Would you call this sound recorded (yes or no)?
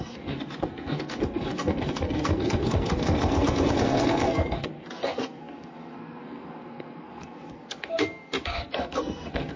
no